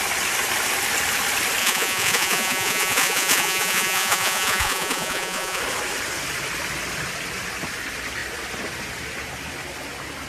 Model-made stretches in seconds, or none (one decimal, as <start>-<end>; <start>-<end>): 1.6-5.6